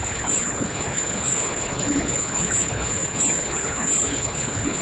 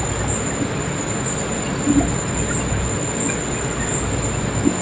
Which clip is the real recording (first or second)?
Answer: second